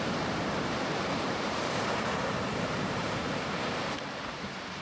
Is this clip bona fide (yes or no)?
no